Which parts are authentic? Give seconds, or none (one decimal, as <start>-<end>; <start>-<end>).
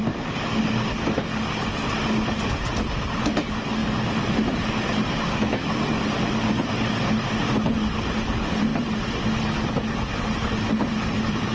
0.0-11.5